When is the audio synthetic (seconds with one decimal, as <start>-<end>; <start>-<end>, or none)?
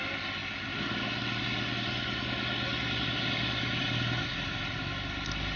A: none